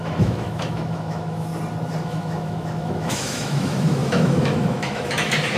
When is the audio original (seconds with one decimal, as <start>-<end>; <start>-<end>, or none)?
1.5-2.0